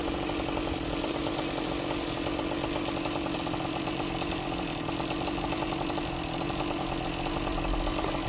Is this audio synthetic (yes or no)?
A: no